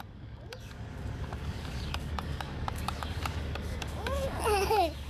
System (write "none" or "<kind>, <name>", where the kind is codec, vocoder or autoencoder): codec, DAC